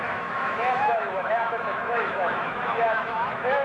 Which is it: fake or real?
fake